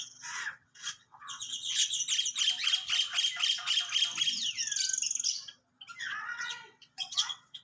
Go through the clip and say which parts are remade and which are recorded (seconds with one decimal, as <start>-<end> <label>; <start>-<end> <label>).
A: 0.0-2.0 remade; 2.0-6.0 recorded; 6.0-7.6 remade